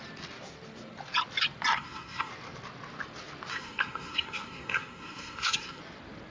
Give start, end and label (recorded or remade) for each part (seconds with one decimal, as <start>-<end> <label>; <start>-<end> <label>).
0.0-1.7 recorded; 1.7-2.3 remade; 2.3-3.5 recorded; 3.5-5.8 remade; 5.8-6.3 recorded